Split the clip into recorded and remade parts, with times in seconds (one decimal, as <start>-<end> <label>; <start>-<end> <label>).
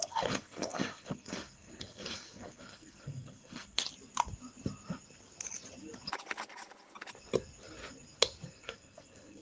0.0-3.8 remade; 3.8-8.5 recorded; 8.5-9.4 remade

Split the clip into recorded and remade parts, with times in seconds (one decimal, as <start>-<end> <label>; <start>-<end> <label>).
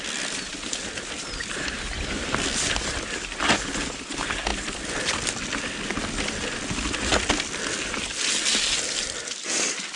0.0-10.0 recorded